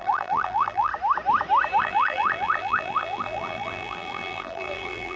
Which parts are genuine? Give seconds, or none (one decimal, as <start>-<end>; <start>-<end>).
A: 0.9-1.8